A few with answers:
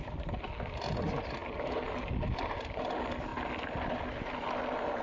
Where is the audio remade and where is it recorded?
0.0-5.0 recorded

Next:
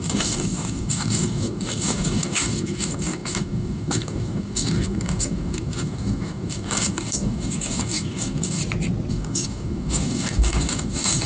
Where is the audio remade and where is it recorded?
0.0-8.6 remade; 8.6-9.1 recorded; 9.1-11.3 remade

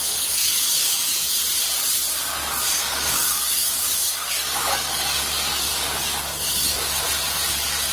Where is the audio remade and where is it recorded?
0.0-1.4 remade; 1.4-2.3 recorded; 2.3-7.0 remade; 7.0-7.9 recorded

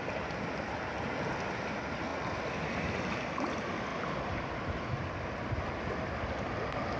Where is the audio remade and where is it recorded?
0.0-7.0 recorded

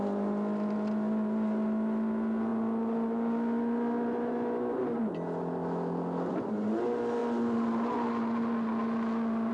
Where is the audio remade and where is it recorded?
0.0-9.5 recorded